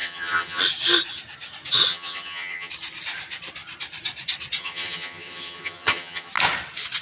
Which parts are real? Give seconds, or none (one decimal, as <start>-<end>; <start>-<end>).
0.6-1.9; 2.7-4.6; 6.3-7.0